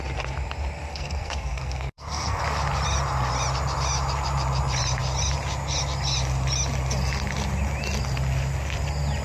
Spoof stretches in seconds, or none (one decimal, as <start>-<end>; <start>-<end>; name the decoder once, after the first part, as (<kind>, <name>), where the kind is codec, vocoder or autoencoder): 0.9-2.4 (codec, SNAC)